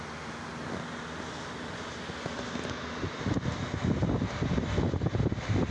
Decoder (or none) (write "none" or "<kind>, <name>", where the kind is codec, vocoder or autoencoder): none